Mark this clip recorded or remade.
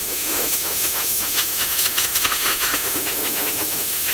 remade